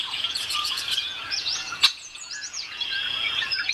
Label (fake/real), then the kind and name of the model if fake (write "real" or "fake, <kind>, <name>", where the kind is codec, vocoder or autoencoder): fake, vocoder, Vocos